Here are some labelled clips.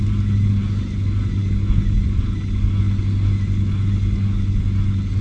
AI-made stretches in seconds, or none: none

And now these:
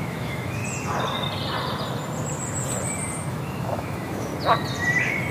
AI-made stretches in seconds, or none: 0.0-0.6 (autoencoder, DAC-VAE); 3.3-4.3

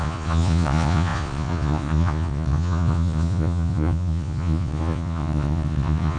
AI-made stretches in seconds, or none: 0.0-6.2 (vocoder, Vocos)

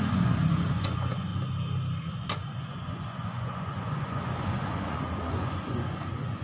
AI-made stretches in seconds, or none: 0.0-1.3 (vocoder, Vocos); 2.1-6.4

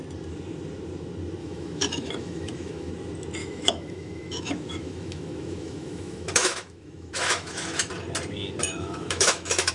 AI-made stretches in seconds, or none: 1.4-2.9 (autoencoder, DAC-VAE); 3.4-7.9; 8.6-9.7

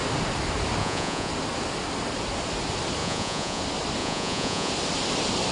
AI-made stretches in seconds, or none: 0.8-1.3 (vocoder, Vocos); 3.0-3.6; 4.0-4.7

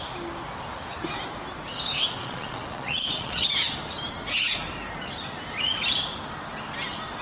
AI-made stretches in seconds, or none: 2.2-3.5 (vocoder, Vocos)